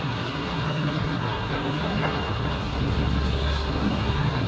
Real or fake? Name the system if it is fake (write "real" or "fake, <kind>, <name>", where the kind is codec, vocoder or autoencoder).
fake, codec, SNAC